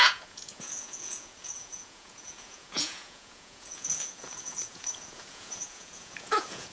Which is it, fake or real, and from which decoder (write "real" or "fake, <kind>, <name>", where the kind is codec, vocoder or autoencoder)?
fake, vocoder, Vocos